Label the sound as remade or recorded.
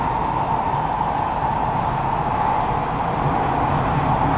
recorded